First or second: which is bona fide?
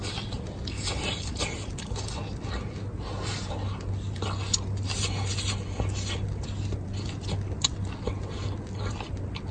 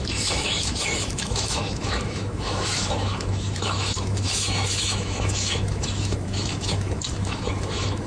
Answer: first